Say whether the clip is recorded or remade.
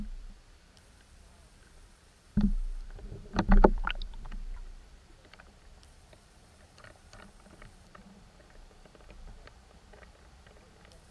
remade